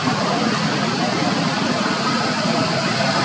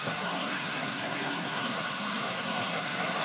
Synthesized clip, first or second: second